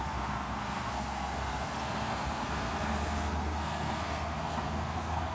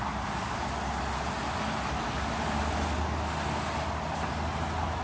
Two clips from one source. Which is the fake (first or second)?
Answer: first